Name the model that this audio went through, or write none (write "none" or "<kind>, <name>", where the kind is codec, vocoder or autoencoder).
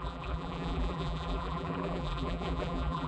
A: vocoder, BigVGAN v2